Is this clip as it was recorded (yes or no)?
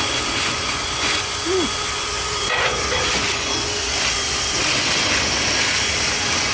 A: no